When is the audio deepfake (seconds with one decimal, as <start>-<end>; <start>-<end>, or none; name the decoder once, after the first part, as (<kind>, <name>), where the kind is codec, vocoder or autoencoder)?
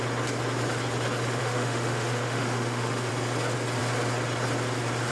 1.4-3.1 (autoencoder, DAC-VAE)